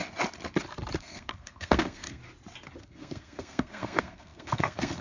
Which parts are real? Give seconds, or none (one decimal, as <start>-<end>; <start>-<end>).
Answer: 0.0-1.0; 2.2-2.8